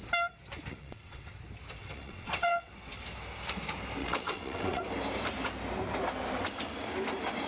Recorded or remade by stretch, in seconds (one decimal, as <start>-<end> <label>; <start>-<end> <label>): 0.0-0.7 recorded; 0.7-1.3 remade; 1.3-1.8 recorded; 1.8-2.7 remade; 2.7-4.0 recorded; 4.0-4.8 remade; 4.8-7.5 recorded